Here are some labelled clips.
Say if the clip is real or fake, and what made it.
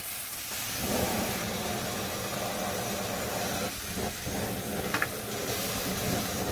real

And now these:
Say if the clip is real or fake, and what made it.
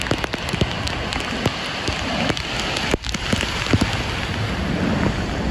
real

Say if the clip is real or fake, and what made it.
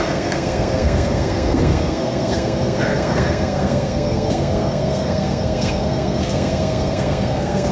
fake, codec, SNAC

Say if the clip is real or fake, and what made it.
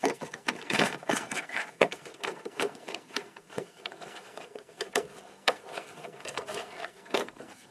fake, codec, SNAC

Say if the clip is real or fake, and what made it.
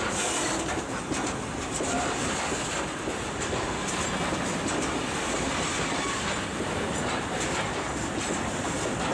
real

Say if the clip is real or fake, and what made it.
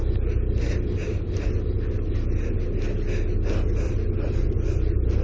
real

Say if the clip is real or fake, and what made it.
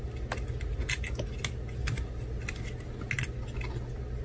real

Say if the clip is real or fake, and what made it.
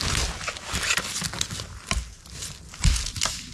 real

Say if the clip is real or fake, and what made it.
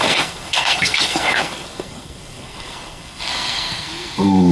fake, codec, SNAC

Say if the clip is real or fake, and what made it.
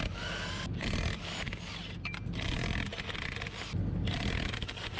real